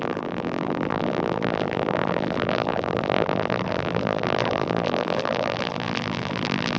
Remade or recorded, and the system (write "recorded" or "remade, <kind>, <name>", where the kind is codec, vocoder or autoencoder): remade, vocoder, BigVGAN v2